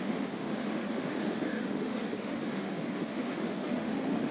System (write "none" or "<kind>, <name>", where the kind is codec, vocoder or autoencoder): autoencoder, DAC-VAE